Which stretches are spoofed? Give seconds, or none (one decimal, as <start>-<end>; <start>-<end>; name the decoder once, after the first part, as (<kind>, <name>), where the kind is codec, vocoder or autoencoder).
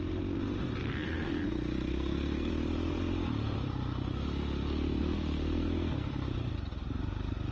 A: 0.8-1.4 (codec, SNAC); 1.9-2.5; 5.0-6.1